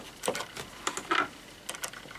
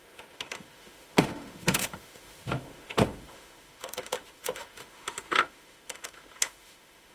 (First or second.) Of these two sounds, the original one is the first